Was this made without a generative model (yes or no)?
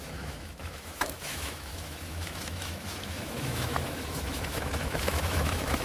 no